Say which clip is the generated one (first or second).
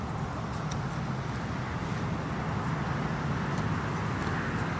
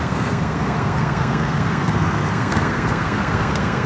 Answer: second